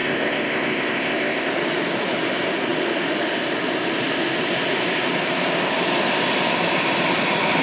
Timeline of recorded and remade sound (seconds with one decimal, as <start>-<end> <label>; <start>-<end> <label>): 0.0-1.5 remade; 1.5-7.6 recorded